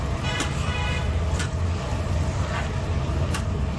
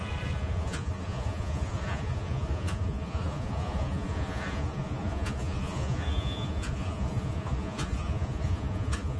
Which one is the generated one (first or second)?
second